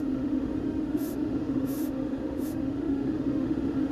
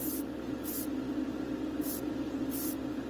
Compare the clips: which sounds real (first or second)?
second